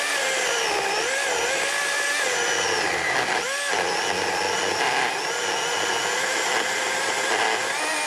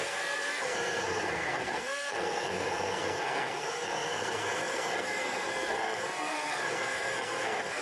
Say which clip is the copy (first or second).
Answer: second